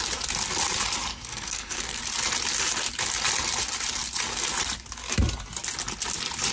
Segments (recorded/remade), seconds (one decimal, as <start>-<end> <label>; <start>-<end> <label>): 0.0-1.1 recorded; 1.1-2.0 remade; 2.0-6.5 recorded